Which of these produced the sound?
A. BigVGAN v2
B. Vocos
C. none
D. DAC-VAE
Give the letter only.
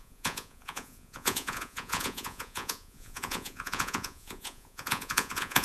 B